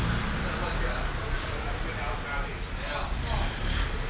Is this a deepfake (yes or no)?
no